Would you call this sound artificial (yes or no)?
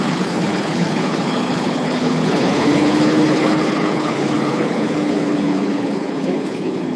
yes